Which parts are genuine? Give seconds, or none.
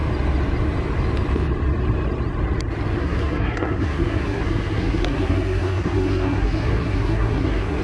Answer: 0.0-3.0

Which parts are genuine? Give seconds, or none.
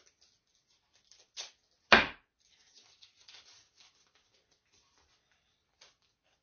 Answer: 0.0-6.4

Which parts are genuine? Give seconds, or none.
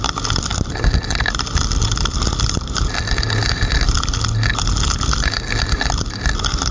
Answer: 0.0-6.7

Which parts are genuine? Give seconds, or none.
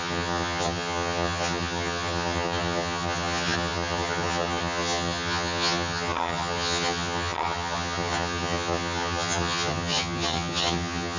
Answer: none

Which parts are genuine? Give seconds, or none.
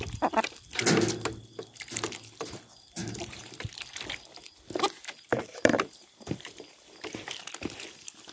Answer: 0.0-3.0; 3.7-5.3; 6.7-8.3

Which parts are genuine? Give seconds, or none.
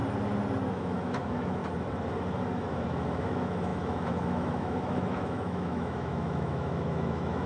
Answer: 0.0-0.7; 1.6-2.7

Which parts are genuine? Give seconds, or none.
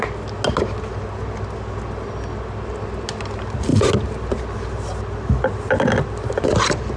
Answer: 0.0-7.0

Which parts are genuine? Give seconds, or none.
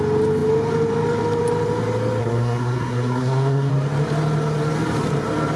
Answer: 0.0-2.2; 3.7-5.6